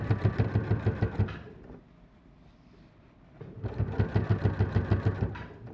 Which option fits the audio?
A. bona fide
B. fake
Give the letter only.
A